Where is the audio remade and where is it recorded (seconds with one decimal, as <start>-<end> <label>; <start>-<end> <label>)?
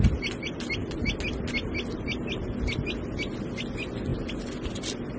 0.0-5.2 recorded